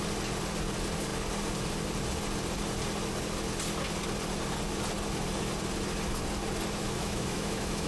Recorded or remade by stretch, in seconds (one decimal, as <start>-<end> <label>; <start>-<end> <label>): 0.0-6.8 recorded; 6.8-7.9 remade